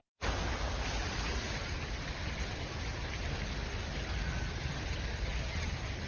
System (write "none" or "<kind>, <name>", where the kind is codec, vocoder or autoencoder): none